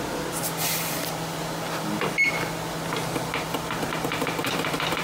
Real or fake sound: real